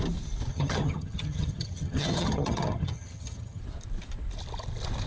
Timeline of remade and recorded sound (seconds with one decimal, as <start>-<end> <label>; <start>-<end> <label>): 0.0-0.5 recorded; 0.5-3.6 remade; 3.6-5.1 recorded